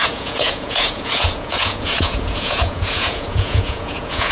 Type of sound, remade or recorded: remade